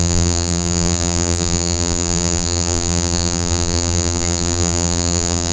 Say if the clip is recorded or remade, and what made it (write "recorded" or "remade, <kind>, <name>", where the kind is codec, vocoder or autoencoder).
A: remade, vocoder, BigVGAN v2